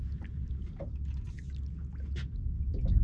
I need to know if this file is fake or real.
real